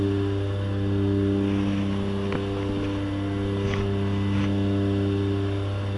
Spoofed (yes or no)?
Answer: no